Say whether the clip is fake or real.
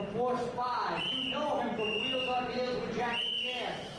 real